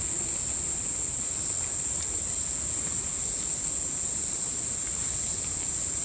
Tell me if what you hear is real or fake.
real